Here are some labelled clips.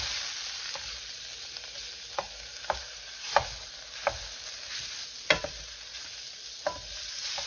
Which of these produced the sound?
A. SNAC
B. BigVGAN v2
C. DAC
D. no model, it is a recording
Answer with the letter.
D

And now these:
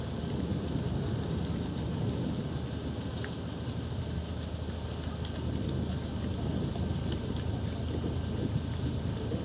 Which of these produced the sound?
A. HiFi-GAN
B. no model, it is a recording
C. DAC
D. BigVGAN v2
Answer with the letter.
B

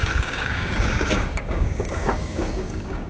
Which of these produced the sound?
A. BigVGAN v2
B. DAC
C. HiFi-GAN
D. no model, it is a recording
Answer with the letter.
B